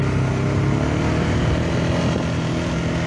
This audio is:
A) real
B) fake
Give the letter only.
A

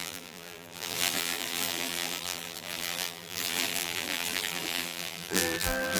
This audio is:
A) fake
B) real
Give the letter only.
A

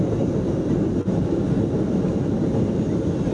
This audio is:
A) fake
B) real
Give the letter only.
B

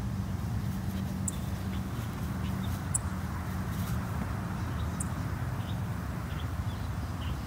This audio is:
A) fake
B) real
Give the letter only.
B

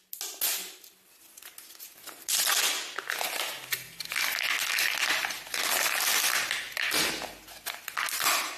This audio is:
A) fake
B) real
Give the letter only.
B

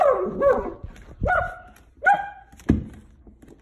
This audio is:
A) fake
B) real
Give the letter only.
B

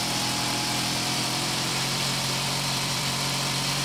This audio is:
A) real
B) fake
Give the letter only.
B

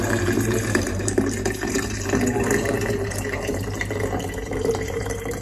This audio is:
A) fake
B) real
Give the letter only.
A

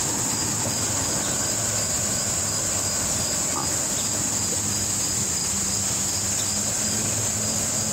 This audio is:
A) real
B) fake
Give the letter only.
A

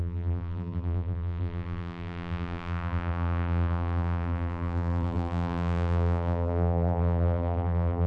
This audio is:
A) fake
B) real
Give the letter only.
A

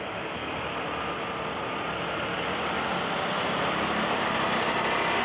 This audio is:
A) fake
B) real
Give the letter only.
B